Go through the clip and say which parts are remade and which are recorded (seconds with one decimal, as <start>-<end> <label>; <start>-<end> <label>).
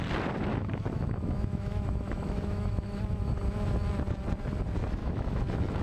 0.0-0.5 recorded; 0.5-3.0 remade; 3.0-5.0 recorded; 5.0-5.8 remade